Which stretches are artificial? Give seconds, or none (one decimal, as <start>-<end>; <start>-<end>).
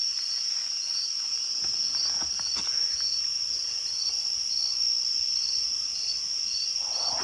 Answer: 3.1-6.3